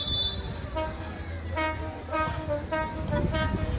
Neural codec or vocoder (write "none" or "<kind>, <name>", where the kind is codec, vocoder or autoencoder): none